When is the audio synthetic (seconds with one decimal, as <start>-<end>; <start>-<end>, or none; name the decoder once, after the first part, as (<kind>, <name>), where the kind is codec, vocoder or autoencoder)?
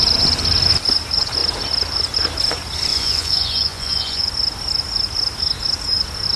2.9-4.3 (vocoder, Vocos)